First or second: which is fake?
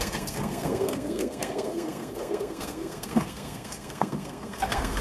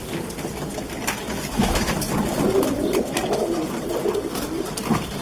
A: first